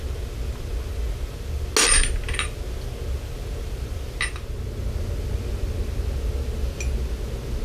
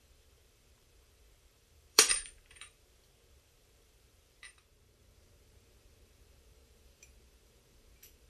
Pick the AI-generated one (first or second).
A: second